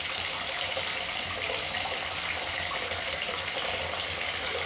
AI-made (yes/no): no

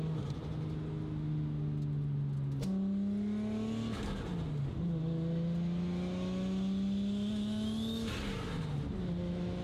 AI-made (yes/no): no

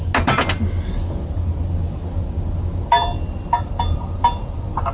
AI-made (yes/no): no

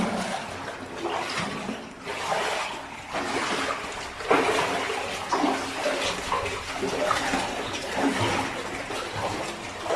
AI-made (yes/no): no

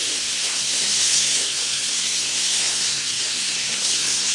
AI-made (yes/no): yes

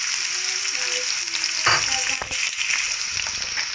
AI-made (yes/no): no